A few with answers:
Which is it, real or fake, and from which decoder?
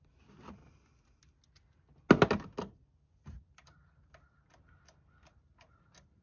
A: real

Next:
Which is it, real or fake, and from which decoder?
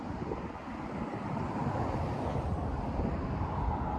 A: real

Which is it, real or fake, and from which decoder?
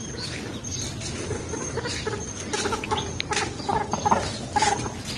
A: real